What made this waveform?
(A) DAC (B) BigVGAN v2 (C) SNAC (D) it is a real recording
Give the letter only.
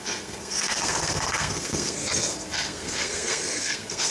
C